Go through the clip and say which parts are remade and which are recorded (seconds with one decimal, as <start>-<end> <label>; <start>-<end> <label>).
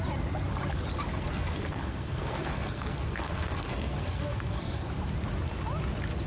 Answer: 0.0-1.1 recorded; 1.1-4.9 remade; 4.9-6.3 recorded